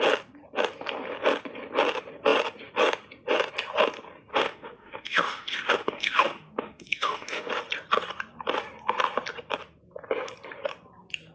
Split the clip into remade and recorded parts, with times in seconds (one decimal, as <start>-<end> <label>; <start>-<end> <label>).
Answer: 0.0-4.3 recorded; 4.3-7.5 remade; 7.5-11.3 recorded

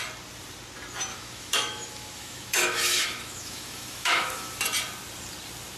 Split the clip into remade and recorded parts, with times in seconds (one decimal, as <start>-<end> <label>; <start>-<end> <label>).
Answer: 0.0-1.1 recorded; 1.1-4.6 remade; 4.6-5.8 recorded

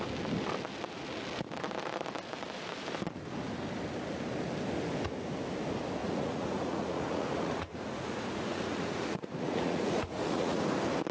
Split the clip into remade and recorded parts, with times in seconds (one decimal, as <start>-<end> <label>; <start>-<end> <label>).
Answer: 0.0-6.0 recorded; 6.0-10.6 remade; 10.6-11.1 recorded

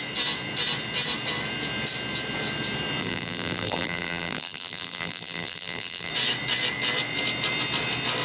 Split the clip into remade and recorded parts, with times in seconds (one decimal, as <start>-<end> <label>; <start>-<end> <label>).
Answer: 0.0-3.0 recorded; 3.0-6.1 remade; 6.1-8.2 recorded

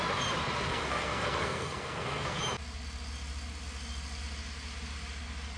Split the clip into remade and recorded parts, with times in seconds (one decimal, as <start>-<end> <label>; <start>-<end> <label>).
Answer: 0.0-0.7 recorded; 0.7-2.4 remade; 2.4-5.6 recorded

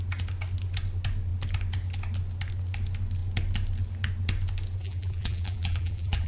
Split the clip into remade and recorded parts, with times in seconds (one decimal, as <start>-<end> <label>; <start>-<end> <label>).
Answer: 0.0-4.8 recorded; 4.8-6.3 remade